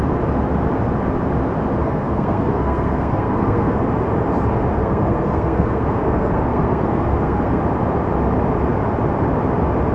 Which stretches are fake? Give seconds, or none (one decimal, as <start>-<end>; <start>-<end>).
1.8-3.8; 4.8-7.6